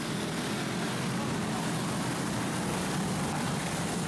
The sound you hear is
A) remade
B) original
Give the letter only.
B